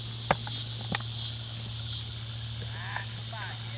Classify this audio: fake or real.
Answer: real